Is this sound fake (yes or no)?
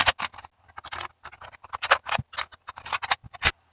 no